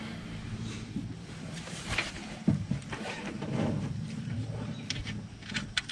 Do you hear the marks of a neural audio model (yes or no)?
yes